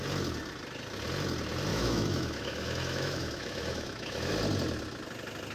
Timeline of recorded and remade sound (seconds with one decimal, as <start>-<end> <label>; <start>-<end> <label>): 0.0-1.7 recorded; 1.7-4.3 remade; 4.3-5.5 recorded